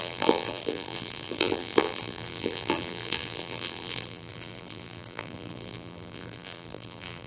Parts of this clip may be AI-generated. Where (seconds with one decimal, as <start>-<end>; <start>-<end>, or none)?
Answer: 0.0-7.3